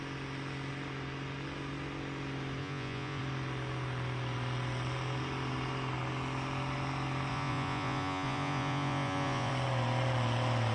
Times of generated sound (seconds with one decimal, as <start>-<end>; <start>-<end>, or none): 2.6-3.2; 7.3-9.5